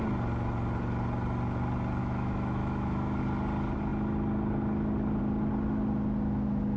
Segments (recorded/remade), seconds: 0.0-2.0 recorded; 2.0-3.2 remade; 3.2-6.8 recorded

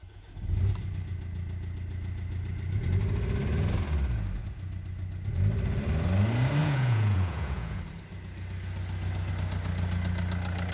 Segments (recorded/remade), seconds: 0.0-6.6 recorded; 6.6-7.8 remade; 7.8-10.7 recorded

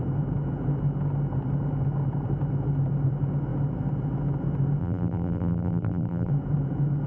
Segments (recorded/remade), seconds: 0.0-4.8 recorded; 4.8-6.3 remade; 6.3-7.1 recorded

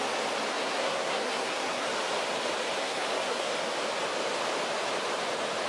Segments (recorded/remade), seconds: 0.0-0.5 recorded; 0.5-1.9 remade; 1.9-2.8 recorded; 2.8-3.5 remade; 3.5-5.7 recorded

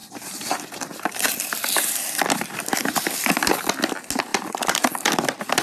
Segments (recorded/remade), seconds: 0.0-3.4 remade; 3.4-4.3 recorded; 4.3-4.9 remade; 4.9-5.6 recorded

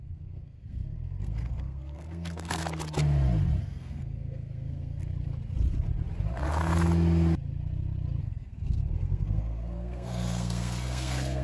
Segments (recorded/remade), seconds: 0.0-2.6 remade; 2.6-3.6 recorded; 3.6-5.0 remade; 5.0-8.2 recorded; 8.2-11.4 remade